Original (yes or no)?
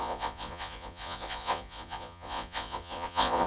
no